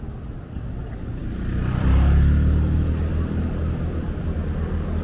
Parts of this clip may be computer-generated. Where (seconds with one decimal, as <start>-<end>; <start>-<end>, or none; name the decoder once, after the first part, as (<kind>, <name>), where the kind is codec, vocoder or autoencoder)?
none